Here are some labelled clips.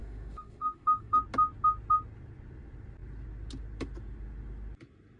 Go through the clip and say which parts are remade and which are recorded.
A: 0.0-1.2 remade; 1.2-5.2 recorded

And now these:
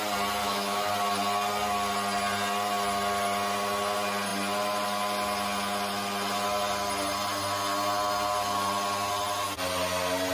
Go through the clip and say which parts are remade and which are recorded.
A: 0.0-0.4 recorded; 0.4-0.9 remade; 0.9-10.3 recorded

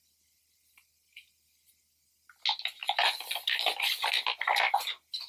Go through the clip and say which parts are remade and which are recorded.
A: 0.0-5.3 recorded